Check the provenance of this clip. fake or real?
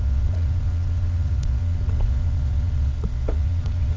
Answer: fake